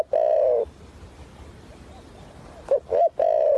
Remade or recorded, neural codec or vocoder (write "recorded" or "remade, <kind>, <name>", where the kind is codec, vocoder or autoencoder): recorded